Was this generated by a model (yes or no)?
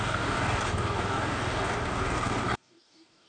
yes